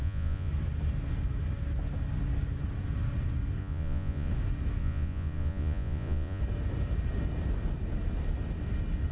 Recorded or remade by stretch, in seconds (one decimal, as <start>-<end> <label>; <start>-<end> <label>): 0.0-0.5 remade; 0.5-3.6 recorded; 3.6-4.3 remade; 4.3-4.8 recorded; 4.8-6.4 remade; 6.4-9.1 recorded